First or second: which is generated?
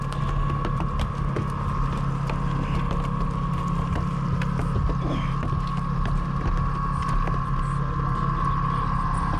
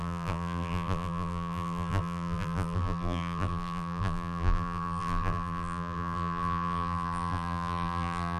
second